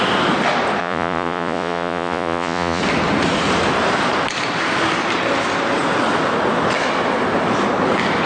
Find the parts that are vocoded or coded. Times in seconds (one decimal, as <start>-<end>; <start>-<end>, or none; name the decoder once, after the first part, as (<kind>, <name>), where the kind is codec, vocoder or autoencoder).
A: 0.8-2.8 (vocoder, Vocos)